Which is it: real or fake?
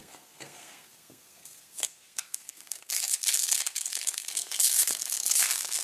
fake